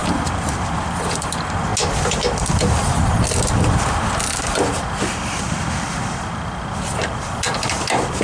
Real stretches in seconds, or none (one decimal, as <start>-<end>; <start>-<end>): 0.8-8.2